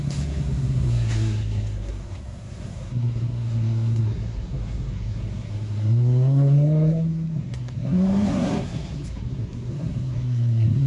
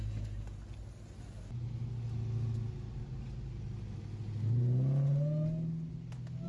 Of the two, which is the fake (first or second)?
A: first